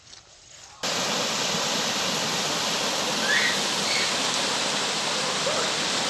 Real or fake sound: real